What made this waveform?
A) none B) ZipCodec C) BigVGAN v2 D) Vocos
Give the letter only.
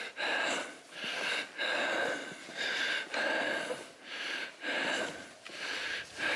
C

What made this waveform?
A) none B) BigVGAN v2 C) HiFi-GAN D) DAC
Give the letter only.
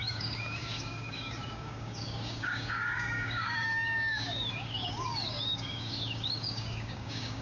D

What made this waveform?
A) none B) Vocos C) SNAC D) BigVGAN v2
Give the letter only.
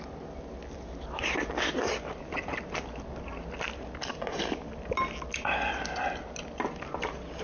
A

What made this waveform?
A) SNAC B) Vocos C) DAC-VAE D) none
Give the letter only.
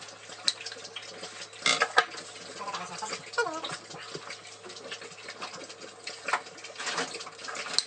D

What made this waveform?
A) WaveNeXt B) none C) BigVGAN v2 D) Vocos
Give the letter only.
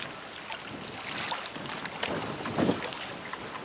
B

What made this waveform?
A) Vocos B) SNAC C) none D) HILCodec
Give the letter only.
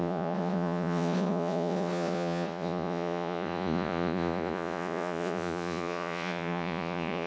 A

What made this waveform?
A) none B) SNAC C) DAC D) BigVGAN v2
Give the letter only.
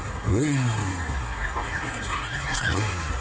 B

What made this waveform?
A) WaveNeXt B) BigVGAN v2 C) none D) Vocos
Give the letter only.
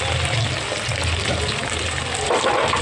C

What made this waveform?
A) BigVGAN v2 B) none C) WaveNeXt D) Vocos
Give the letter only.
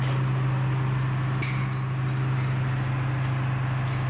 B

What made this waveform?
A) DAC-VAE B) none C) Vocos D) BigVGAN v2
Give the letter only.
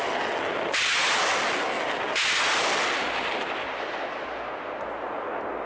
B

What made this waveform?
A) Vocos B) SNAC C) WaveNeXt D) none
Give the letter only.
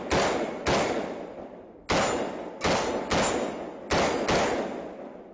D